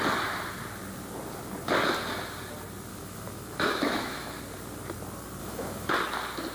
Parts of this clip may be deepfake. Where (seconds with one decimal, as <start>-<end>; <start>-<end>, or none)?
2.9-4.4; 5.4-5.9

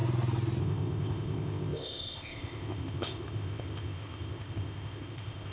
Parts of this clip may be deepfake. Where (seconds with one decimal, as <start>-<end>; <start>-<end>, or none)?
0.6-5.5

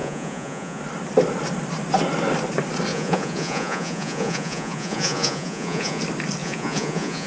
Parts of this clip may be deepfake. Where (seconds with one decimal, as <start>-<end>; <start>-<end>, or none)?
0.0-0.8; 2.9-6.0; 6.4-7.3

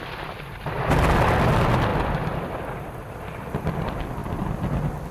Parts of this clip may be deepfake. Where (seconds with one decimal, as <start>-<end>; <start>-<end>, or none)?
1.9-3.1

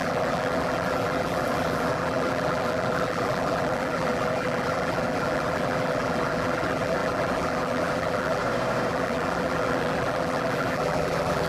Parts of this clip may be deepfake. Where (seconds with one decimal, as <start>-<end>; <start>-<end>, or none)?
0.0-8.4; 8.9-11.5